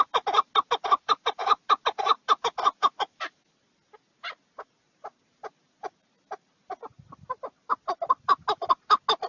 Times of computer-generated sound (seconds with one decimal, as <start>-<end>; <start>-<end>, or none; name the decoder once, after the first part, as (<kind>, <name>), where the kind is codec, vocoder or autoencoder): none